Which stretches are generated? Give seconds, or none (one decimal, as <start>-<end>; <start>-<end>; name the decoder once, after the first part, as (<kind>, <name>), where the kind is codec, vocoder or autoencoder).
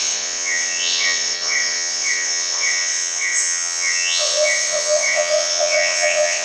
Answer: 0.0-6.4 (vocoder, WaveNeXt)